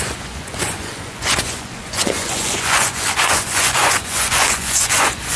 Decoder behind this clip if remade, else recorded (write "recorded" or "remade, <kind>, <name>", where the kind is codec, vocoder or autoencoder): remade, vocoder, Vocos